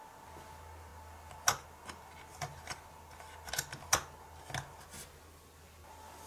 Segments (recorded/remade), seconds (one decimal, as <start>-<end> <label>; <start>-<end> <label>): 0.0-6.3 recorded